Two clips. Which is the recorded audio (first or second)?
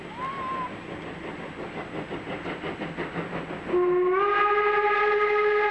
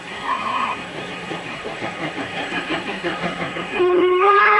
first